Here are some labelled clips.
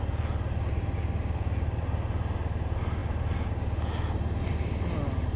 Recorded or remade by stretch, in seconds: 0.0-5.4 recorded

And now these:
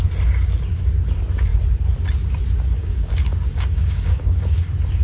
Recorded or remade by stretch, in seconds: 0.0-2.8 recorded; 2.8-4.6 remade; 4.6-5.0 recorded

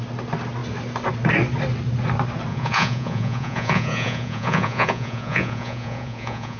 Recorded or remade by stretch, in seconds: 0.0-2.5 recorded; 2.5-6.6 remade

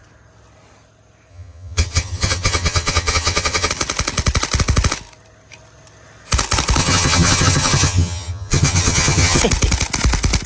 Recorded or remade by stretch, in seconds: 0.0-1.3 recorded; 1.3-3.7 remade; 3.7-6.8 recorded; 6.8-9.4 remade; 9.4-10.5 recorded